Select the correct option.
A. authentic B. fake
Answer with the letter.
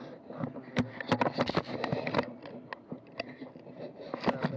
A